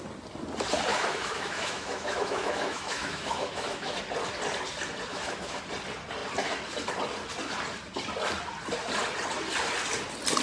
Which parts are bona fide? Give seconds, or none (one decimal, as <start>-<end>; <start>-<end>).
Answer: 0.0-0.9; 4.0-5.1; 5.6-10.4